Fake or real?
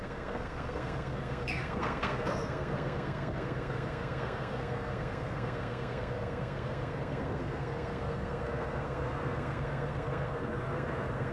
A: fake